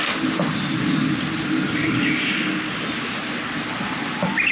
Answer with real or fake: real